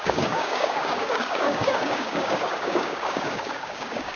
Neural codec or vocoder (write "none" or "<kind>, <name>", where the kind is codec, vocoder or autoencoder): codec, DAC